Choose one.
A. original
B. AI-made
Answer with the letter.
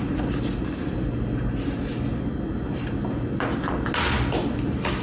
A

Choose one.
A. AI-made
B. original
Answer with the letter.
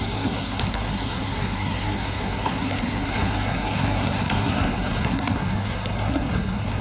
A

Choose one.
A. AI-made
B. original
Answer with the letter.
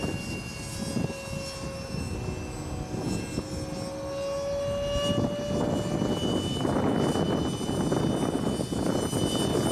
B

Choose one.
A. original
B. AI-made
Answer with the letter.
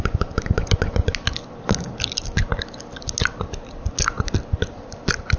A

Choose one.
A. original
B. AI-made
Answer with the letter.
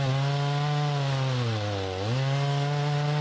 A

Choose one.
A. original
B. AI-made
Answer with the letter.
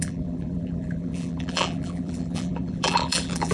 B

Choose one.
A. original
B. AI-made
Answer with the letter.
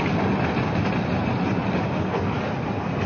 A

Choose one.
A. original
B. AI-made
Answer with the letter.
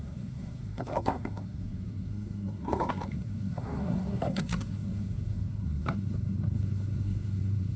B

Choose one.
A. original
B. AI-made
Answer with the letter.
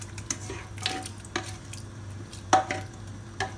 A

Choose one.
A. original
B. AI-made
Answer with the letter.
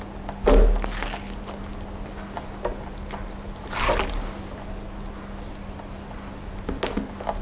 A